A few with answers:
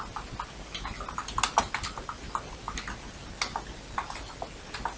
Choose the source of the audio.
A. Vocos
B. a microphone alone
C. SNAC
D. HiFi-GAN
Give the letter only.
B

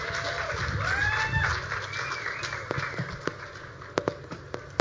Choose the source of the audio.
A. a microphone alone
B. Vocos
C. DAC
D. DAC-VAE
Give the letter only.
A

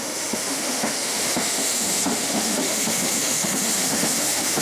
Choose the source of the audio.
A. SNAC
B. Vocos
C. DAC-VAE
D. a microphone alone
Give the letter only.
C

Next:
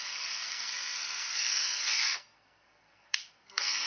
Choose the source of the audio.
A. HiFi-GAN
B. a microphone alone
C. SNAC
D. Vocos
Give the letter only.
C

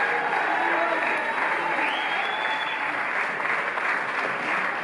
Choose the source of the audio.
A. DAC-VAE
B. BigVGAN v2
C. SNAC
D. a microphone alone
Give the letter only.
D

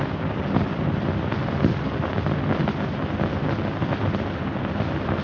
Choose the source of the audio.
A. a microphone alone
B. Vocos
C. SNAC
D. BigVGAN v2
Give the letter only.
A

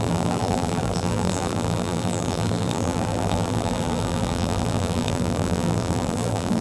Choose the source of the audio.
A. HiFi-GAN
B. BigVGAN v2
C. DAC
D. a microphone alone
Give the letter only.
B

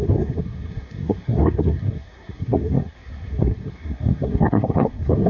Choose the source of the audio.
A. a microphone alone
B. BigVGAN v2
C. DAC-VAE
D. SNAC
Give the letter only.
D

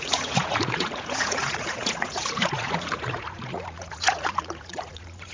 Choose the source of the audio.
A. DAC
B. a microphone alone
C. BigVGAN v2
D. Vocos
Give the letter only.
D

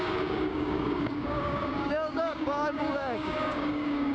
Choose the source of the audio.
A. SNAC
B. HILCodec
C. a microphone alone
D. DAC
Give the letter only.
D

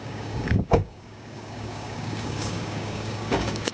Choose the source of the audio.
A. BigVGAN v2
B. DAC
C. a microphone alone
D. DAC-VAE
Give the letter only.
B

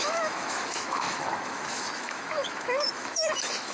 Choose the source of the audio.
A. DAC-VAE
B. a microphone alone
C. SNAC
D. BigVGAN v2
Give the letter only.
A